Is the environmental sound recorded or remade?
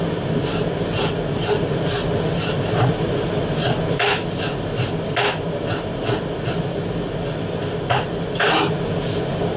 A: recorded